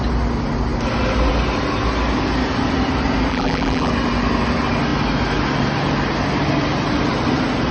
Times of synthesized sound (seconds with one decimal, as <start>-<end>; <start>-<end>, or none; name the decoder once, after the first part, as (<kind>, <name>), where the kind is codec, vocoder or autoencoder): 3.3-3.9 (vocoder, BigVGAN v2)